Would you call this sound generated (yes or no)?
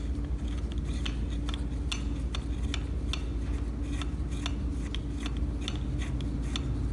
no